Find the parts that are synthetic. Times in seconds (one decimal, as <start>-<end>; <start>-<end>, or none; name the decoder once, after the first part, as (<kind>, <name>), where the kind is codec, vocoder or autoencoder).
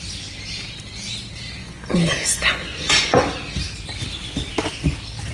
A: 1.6-3.2 (vocoder, Vocos)